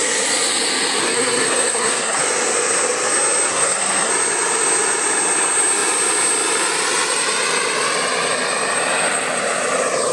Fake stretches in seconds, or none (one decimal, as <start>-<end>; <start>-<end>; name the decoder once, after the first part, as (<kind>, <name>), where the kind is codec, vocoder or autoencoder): 1.0-2.2 (codec, SNAC); 3.5-4.1